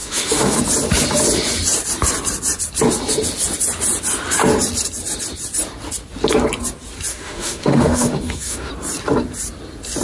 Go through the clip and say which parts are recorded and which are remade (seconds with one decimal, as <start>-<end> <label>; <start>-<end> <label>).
0.0-0.6 remade; 0.6-7.1 recorded; 7.1-8.7 remade; 8.7-10.0 recorded